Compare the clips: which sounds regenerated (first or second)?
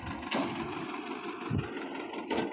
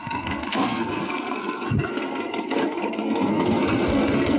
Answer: second